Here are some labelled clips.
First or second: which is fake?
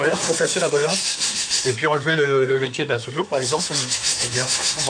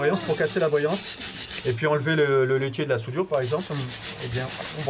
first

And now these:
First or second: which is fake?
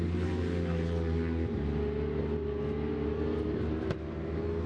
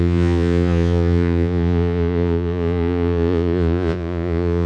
second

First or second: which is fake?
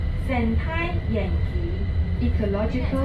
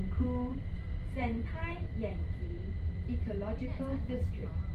second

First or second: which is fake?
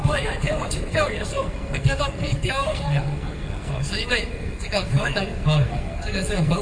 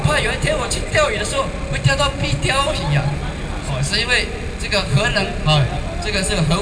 first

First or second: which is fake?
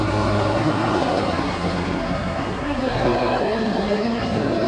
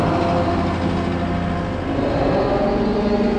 first